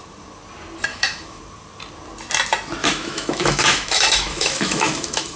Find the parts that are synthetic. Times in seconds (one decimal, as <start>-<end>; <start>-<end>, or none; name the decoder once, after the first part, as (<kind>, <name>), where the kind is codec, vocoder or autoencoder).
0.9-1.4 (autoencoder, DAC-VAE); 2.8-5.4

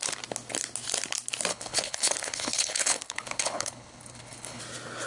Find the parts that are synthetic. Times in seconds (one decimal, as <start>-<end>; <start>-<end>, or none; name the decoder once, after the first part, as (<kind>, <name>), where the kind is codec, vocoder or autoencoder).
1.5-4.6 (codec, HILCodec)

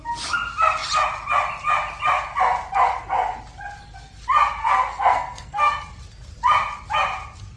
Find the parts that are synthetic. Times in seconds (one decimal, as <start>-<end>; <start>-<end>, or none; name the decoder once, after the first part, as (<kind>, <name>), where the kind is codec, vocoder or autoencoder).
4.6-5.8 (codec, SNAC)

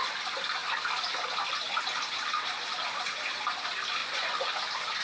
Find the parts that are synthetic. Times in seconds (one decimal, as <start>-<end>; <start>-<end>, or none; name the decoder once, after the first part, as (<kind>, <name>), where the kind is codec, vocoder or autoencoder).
4.0-4.5 (vocoder, Vocos)

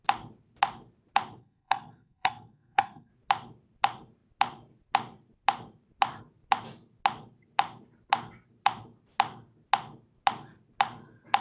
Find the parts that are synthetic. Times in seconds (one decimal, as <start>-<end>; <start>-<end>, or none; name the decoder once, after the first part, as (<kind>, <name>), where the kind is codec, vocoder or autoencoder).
1.4-3.1 (codec, SNAC)